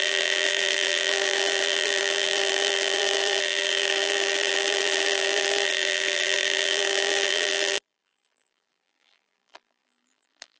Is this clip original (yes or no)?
no